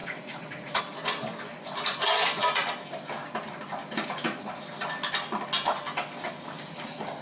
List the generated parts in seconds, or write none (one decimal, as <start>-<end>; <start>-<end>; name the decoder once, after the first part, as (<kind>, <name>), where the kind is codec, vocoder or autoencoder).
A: 0.0-0.8 (vocoder, Vocos)